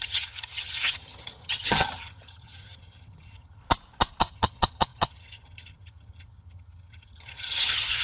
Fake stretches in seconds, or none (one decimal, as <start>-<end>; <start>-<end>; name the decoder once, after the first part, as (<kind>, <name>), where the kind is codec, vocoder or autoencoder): 0.0-3.6 (vocoder, HiFi-GAN); 4.2-8.0